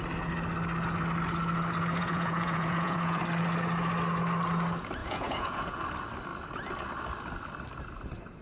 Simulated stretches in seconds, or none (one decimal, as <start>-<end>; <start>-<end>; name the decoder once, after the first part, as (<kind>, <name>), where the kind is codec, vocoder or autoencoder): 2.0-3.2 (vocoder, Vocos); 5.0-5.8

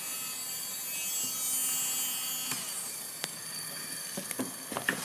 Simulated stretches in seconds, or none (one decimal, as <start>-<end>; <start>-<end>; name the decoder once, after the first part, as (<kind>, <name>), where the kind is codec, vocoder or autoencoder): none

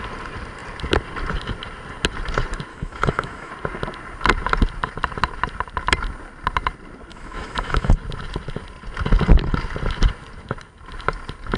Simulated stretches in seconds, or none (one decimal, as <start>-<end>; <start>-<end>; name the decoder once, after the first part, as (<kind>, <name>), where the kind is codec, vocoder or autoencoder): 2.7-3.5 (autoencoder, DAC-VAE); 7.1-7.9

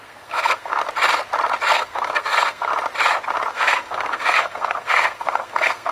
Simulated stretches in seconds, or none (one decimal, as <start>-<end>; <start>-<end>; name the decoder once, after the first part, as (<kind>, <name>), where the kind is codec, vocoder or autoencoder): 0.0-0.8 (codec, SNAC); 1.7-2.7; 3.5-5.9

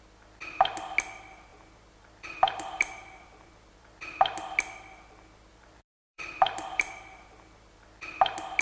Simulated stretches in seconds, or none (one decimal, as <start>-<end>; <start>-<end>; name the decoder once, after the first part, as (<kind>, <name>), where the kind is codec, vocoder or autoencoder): 1.5-4.0 (vocoder, BigVGAN v2); 5.5-7.8

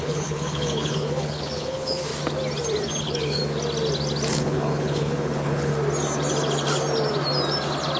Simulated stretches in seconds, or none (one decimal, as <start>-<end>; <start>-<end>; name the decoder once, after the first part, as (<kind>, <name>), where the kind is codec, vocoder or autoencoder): 0.0-2.1 (codec, HILCodec); 3.0-3.4; 4.3-5.7

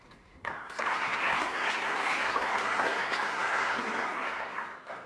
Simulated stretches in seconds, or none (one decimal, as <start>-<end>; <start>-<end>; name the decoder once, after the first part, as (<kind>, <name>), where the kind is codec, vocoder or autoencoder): 0.0-5.1 (codec, SNAC)